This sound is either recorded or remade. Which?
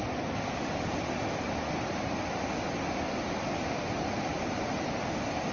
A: recorded